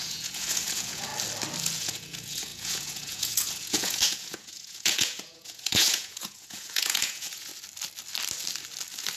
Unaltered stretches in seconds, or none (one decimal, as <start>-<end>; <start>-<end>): 1.1-1.6; 7.5-9.2